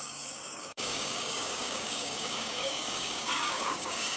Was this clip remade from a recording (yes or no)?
yes